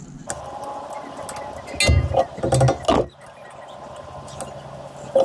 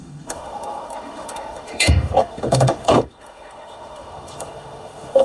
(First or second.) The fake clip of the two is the second